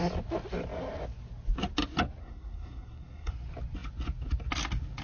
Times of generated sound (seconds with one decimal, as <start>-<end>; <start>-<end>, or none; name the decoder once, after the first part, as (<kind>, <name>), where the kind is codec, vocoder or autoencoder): 2.2-3.3 (codec, SNAC)